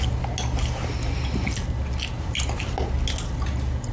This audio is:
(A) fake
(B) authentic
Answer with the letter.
B